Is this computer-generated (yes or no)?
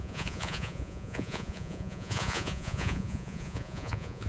yes